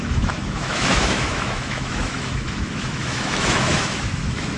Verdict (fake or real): fake